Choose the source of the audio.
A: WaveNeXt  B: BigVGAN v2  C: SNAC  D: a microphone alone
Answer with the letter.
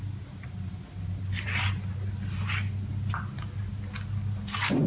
D